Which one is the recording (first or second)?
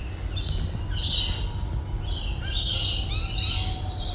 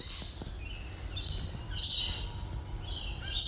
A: first